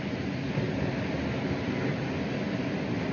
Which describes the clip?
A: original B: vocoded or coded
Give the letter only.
A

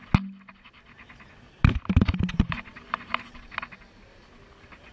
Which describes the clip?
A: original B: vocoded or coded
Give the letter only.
A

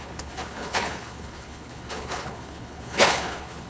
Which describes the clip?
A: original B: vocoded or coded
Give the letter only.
B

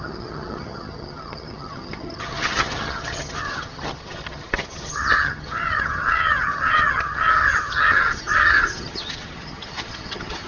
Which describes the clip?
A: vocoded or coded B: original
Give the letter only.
A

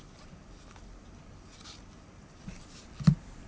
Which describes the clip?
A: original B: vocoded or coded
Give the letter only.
A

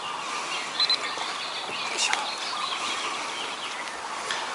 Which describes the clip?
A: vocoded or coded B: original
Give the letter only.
B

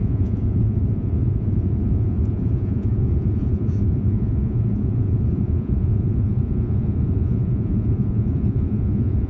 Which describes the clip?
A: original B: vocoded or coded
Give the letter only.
B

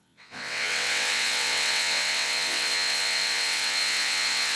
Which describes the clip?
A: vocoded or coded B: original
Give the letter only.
A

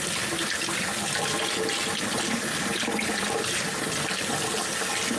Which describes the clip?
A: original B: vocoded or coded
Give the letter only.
A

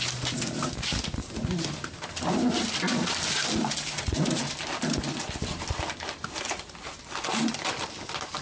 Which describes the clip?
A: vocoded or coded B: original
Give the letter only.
B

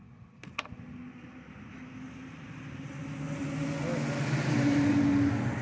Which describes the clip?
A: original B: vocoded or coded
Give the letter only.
A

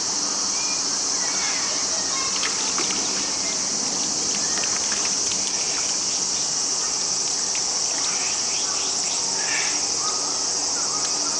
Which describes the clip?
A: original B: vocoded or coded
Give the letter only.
A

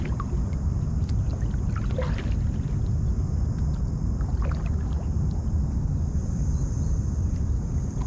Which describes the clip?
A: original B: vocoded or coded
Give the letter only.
A